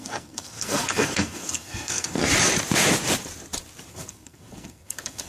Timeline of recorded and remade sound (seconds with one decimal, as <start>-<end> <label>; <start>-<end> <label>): 0.0-2.2 remade; 2.2-3.9 recorded; 3.9-5.3 remade